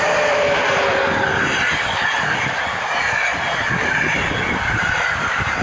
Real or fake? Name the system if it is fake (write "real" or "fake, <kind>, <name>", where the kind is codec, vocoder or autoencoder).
fake, vocoder, BigVGAN v2